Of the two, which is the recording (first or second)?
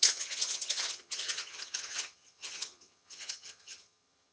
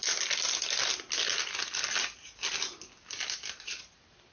second